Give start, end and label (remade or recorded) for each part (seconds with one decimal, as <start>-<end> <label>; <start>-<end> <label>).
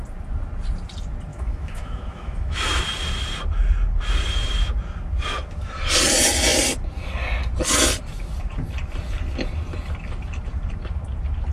0.0-1.3 recorded; 1.3-2.8 remade; 2.8-11.5 recorded